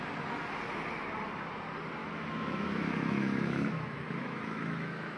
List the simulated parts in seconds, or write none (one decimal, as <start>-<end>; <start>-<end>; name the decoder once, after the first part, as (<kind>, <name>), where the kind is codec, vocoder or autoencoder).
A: 2.0-5.2 (autoencoder, DAC-VAE)